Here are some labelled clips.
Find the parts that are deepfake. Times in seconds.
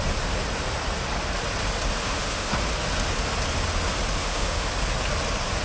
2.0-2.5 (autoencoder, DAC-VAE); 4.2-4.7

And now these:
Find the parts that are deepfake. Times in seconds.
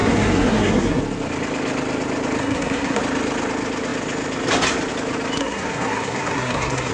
0.0-1.0 (codec, SNAC); 2.4-3.0; 5.4-6.9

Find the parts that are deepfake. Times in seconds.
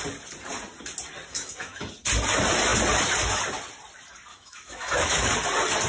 1.3-1.9 (autoencoder, DAC-VAE); 4.3-5.3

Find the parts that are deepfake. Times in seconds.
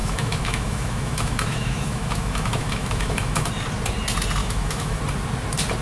0.0-3.5 (autoencoder, DAC-VAE); 4.4-5.0